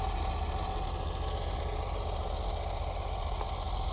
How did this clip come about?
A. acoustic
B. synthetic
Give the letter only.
A